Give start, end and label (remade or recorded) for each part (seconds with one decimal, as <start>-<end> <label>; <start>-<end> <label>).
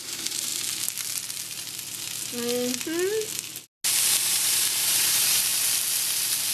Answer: 0.0-0.5 remade; 0.5-4.2 recorded; 4.2-5.5 remade; 5.5-6.5 recorded